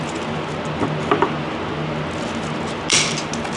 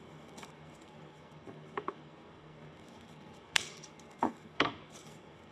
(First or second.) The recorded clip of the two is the first